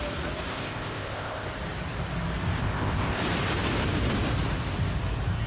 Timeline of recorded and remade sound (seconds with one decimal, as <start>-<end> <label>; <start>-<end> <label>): 0.0-0.5 recorded; 0.5-1.5 remade; 1.5-2.6 recorded; 2.6-3.2 remade; 3.2-5.5 recorded